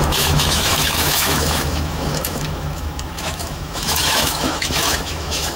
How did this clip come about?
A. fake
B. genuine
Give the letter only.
A